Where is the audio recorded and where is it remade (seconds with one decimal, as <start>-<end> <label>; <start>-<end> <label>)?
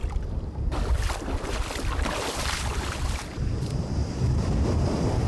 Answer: 0.0-5.3 recorded